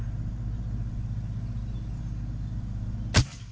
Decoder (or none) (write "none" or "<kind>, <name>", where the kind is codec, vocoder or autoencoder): none